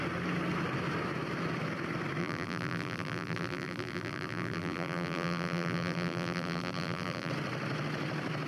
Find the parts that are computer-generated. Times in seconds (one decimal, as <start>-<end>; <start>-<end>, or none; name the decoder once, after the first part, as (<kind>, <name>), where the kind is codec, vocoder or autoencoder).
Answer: 2.2-7.3 (vocoder, BigVGAN v2)